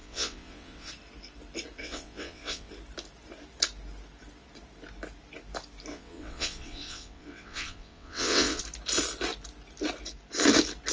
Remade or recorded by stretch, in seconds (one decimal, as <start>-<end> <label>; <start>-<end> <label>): 0.0-0.9 remade; 0.9-1.8 recorded; 1.8-2.7 remade; 2.7-5.9 recorded; 5.9-8.6 remade; 8.6-10.9 recorded